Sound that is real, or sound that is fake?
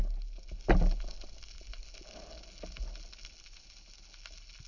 real